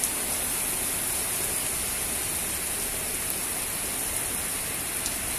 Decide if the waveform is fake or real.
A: real